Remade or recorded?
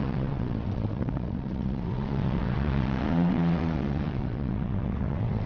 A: remade